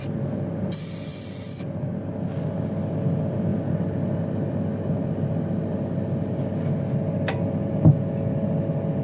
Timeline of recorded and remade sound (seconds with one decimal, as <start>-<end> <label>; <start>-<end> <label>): 0.0-9.0 recorded